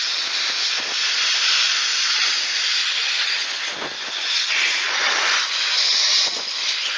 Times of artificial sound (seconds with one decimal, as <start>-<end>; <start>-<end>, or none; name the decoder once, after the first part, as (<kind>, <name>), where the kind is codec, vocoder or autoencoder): 2.8-7.0 (vocoder, Vocos)